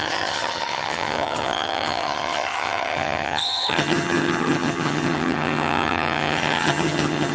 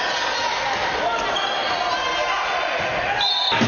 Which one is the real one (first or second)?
second